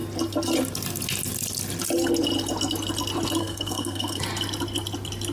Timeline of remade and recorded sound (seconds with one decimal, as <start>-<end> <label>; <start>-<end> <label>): 0.0-3.4 recorded; 3.4-4.2 remade; 4.2-5.3 recorded